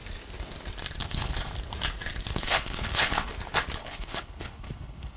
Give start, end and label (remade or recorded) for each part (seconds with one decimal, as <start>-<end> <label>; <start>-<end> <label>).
0.0-1.0 recorded; 1.0-1.5 remade; 1.5-2.3 recorded; 2.3-3.3 remade; 3.3-3.8 recorded; 3.8-5.2 remade